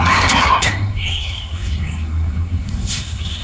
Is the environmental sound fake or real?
fake